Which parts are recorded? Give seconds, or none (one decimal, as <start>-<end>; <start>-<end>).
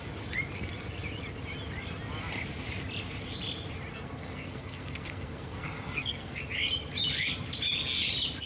0.0-3.9; 6.4-8.5